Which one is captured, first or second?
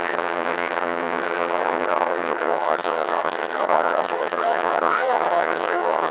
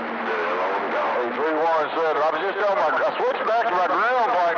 second